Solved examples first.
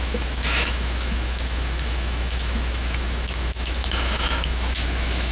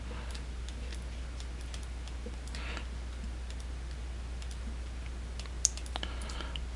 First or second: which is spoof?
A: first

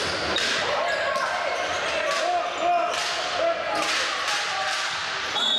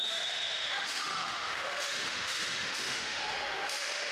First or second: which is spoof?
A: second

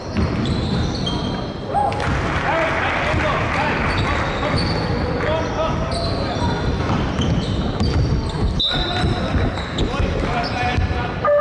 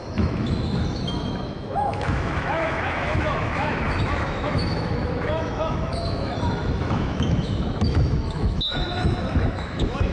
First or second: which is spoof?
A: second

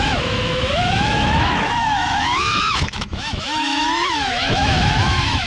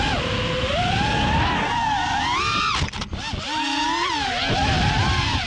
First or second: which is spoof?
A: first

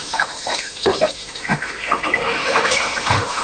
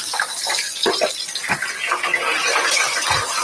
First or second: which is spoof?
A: first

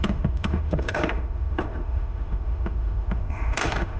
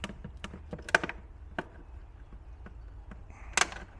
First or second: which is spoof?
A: first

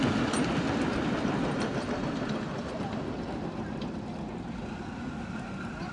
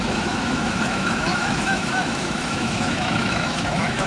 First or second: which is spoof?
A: second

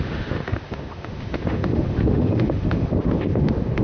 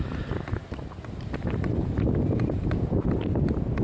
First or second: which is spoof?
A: first